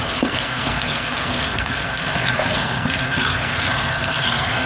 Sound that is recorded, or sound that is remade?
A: remade